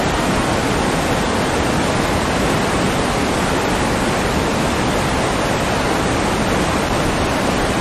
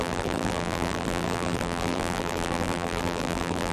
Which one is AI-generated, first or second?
second